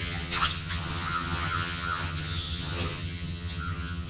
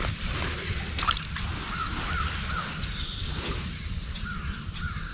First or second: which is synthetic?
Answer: first